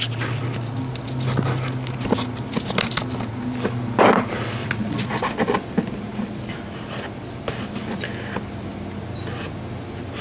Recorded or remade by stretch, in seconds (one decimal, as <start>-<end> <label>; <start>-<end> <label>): 0.0-4.6 recorded; 4.6-5.2 remade; 5.2-10.2 recorded